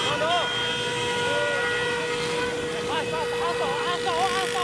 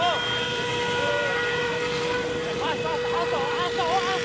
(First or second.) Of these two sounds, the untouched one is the first